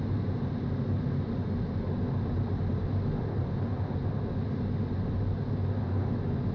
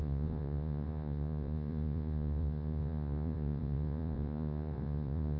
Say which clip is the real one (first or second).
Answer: first